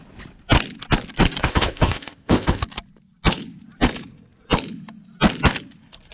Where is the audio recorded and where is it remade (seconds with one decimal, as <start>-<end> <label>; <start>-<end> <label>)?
0.0-1.4 recorded; 1.4-2.6 remade; 2.6-6.1 recorded